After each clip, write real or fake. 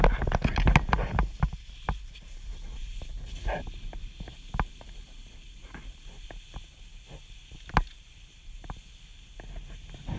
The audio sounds real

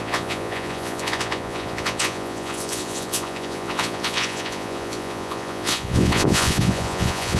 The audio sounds fake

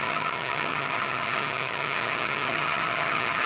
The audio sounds fake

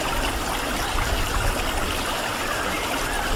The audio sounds real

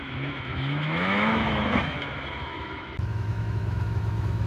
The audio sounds fake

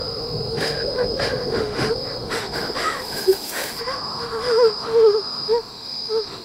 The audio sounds fake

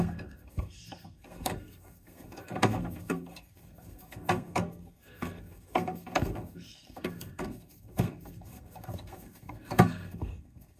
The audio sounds fake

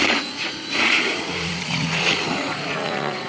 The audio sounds fake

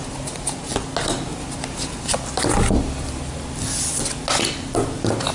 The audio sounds real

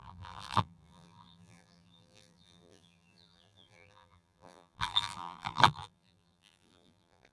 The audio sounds fake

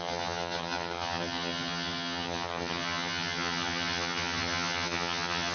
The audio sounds fake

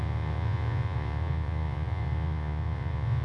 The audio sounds fake